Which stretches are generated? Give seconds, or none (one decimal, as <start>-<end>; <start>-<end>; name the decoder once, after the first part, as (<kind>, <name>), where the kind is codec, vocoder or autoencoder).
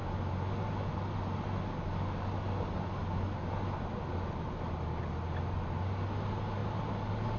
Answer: none